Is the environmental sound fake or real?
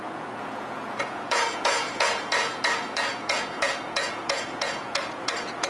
fake